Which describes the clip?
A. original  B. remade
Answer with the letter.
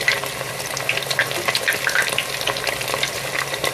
A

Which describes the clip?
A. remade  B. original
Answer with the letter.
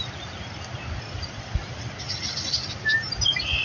B